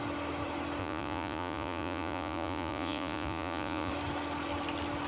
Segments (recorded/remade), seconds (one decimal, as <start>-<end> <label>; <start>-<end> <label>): 0.0-0.8 recorded; 0.8-3.9 remade; 3.9-5.1 recorded

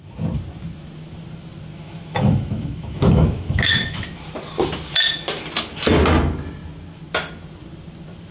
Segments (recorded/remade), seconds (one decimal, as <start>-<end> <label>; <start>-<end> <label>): 0.0-1.7 recorded; 1.7-4.3 remade; 4.3-8.3 recorded

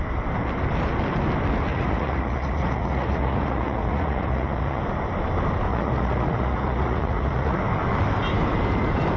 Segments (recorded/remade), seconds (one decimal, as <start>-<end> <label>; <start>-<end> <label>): 0.0-1.7 recorded; 1.7-4.8 remade; 4.8-5.7 recorded; 5.7-7.6 remade; 7.6-9.2 recorded

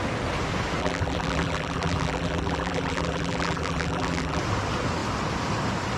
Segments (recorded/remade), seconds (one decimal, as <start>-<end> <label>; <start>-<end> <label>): 0.0-0.8 recorded; 0.8-4.4 remade; 4.4-6.0 recorded